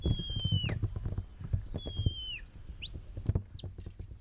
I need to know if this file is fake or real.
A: real